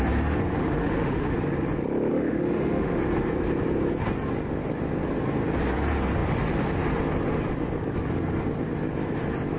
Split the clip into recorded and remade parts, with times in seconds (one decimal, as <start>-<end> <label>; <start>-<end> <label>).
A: 0.0-0.5 recorded; 0.5-1.3 remade; 1.3-2.1 recorded; 2.1-3.0 remade; 3.0-9.6 recorded